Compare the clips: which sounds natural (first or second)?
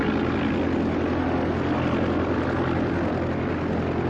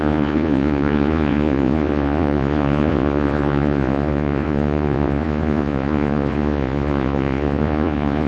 first